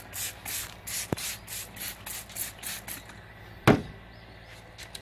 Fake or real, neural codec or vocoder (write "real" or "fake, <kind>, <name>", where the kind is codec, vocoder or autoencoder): real